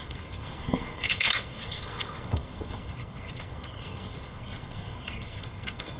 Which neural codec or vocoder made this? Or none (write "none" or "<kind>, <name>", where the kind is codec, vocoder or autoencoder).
codec, SNAC